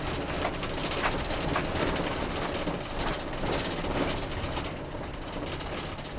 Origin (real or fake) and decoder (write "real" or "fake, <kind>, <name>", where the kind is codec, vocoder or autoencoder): real